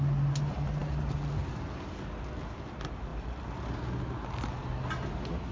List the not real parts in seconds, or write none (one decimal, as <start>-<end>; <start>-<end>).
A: none